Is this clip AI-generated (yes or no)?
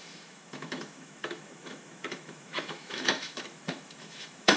yes